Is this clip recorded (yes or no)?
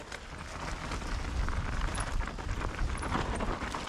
yes